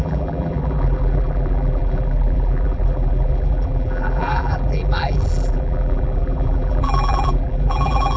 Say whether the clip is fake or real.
fake